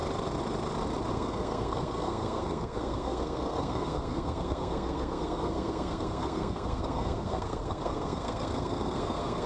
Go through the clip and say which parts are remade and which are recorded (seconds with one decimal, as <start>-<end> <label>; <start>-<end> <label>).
0.0-1.1 recorded; 1.1-9.5 remade